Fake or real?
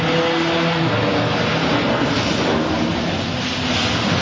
real